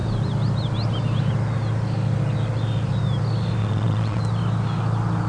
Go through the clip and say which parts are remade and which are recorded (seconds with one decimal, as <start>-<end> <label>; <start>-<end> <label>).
0.0-3.6 recorded; 3.6-4.2 remade; 4.2-5.3 recorded